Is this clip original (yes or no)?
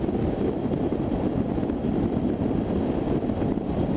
yes